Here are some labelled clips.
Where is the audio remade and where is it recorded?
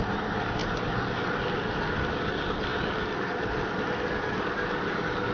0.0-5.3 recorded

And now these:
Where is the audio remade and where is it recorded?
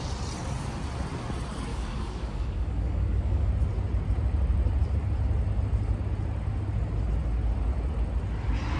0.0-1.7 recorded; 1.7-3.5 remade; 3.5-8.8 recorded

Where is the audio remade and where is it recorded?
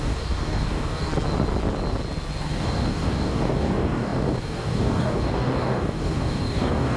0.0-1.1 remade; 1.1-2.4 recorded; 2.4-7.0 remade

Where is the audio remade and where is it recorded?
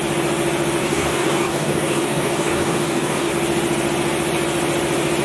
0.0-0.8 recorded; 0.8-3.3 remade; 3.3-5.2 recorded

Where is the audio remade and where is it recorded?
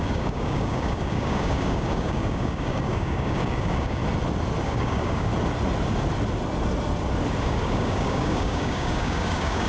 0.0-4.0 remade; 4.0-4.6 recorded; 4.6-5.3 remade; 5.3-7.4 recorded; 7.4-9.7 remade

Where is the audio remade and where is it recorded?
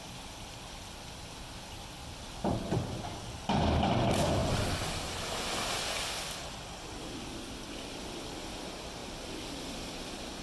0.0-10.4 recorded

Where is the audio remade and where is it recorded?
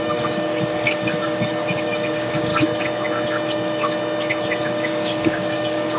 0.0-2.5 remade; 2.5-4.7 recorded; 4.7-6.0 remade